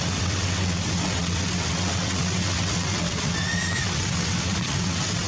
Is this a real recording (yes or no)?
no